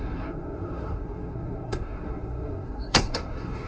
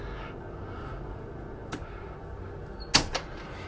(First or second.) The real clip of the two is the second